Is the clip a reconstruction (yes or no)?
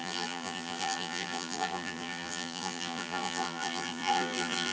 yes